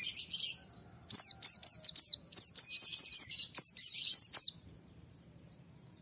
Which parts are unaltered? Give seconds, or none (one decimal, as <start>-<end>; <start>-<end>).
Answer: 0.0-3.1

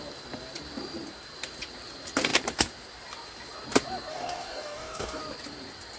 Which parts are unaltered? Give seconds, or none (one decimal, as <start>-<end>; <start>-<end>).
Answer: 0.0-4.1; 5.2-6.0

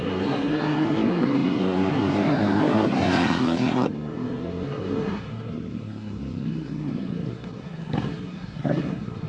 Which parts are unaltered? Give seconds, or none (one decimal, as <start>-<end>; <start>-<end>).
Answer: none

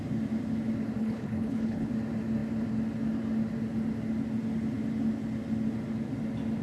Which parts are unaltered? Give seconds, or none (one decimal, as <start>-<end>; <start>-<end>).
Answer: 0.0-1.0; 1.9-6.6

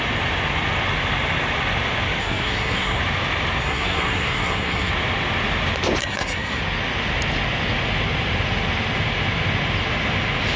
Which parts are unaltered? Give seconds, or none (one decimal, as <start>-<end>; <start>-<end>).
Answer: 0.0-2.2; 3.0-3.6; 4.9-6.0; 6.6-10.6

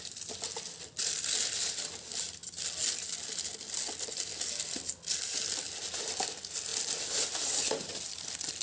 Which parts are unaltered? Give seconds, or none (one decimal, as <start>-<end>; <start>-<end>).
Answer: 0.0-8.6

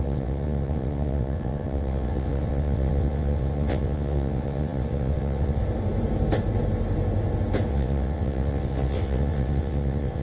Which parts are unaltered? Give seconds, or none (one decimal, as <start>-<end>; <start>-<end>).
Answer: 5.6-7.7

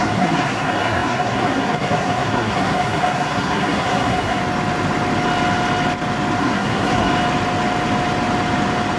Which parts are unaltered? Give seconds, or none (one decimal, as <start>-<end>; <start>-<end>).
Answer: 4.4-6.4; 7.1-9.0